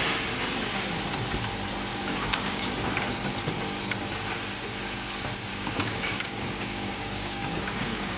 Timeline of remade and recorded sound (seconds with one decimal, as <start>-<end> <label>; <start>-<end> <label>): 0.0-1.9 recorded; 1.9-2.7 remade; 2.7-5.5 recorded; 5.5-8.2 remade